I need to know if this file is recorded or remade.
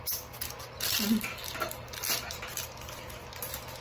recorded